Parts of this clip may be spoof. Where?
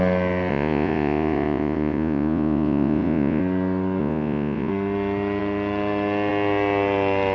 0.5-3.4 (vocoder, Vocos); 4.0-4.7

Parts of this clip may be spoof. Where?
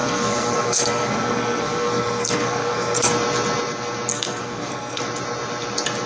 0.0-3.1 (codec, SNAC); 4.1-5.0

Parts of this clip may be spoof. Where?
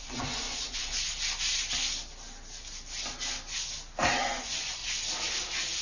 0.0-1.1 (vocoder, Vocos); 4.3-4.8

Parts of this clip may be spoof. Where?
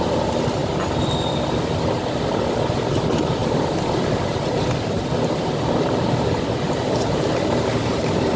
3.4-5.1 (vocoder, BigVGAN v2)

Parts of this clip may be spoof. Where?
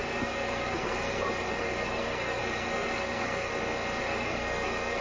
0.0-3.5 (codec, SNAC); 4.0-5.0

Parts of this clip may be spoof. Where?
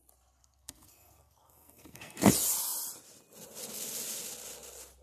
0.4-2.3 (codec, SNAC)